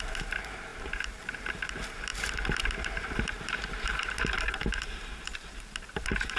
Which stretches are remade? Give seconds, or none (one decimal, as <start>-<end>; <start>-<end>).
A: 0.0-6.4